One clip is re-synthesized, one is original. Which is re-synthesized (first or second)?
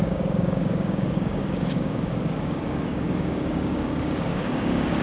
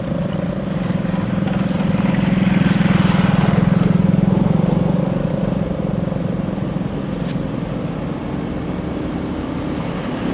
first